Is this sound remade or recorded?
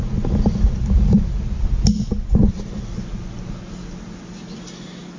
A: recorded